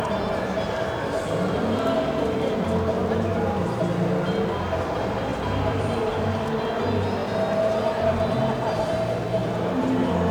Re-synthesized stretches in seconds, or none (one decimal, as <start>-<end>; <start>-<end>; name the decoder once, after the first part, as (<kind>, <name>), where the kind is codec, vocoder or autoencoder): 5.3-6.6 (vocoder, BigVGAN v2)